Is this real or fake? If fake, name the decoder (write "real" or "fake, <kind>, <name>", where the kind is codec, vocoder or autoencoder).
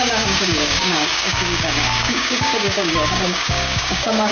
fake, codec, DAC